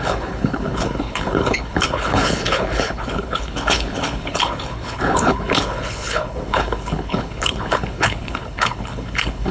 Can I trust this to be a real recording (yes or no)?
no